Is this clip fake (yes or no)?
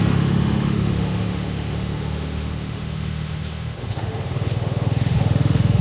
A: yes